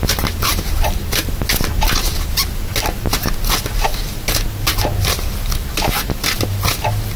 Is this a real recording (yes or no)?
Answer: yes